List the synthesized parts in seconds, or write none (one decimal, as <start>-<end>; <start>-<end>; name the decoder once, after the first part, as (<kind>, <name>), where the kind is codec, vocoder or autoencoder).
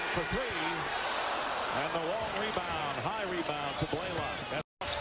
none